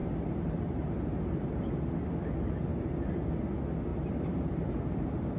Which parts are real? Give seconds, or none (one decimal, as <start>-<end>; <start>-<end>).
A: 1.9-2.7; 3.3-3.9; 4.6-5.4